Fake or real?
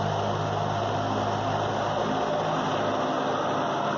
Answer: real